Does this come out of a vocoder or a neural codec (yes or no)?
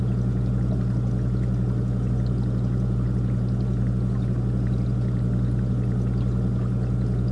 no